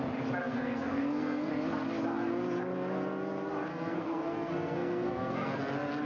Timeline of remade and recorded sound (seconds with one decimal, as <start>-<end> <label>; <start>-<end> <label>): 0.0-0.4 recorded; 0.4-1.5 remade; 1.5-3.7 recorded; 3.7-5.6 remade; 5.6-6.1 recorded